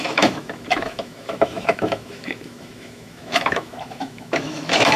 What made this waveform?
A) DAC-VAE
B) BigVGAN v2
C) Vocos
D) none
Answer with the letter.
A